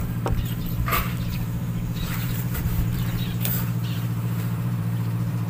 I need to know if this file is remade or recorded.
remade